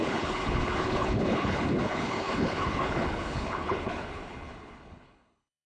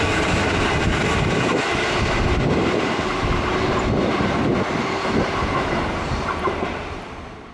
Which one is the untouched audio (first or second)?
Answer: second